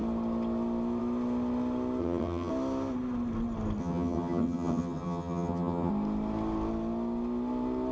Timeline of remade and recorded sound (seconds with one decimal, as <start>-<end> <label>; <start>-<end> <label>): 0.0-2.0 recorded; 2.0-2.5 remade; 2.5-3.8 recorded; 3.8-5.9 remade; 5.9-7.9 recorded

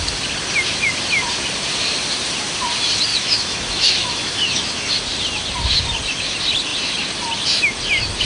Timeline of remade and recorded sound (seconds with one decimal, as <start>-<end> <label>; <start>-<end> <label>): 0.0-3.1 recorded; 3.1-4.9 remade; 4.9-8.2 recorded